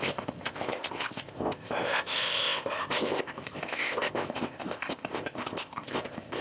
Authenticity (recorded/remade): remade